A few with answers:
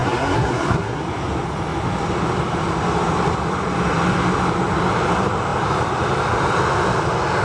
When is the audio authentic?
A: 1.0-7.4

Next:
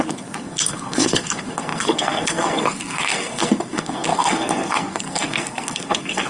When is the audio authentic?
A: none

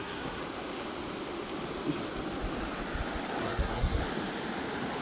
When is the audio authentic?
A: 0.4-3.4; 4.0-5.0